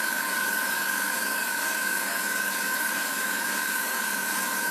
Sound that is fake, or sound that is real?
fake